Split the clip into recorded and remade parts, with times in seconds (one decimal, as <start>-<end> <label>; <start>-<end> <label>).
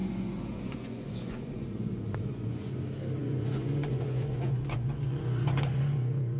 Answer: 0.0-2.8 remade; 2.8-3.2 recorded; 3.2-6.4 remade